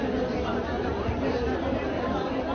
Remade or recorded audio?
recorded